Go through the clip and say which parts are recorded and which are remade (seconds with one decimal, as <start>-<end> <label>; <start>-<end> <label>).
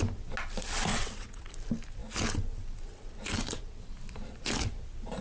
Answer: 0.0-0.9 recorded; 0.9-1.5 remade; 1.5-5.2 recorded